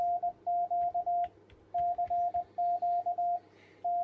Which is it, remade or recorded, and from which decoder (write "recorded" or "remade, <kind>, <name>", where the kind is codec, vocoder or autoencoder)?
recorded